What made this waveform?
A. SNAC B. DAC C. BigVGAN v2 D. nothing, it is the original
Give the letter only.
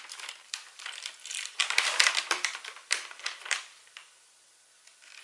C